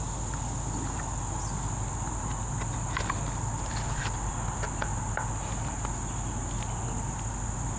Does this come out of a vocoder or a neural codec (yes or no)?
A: no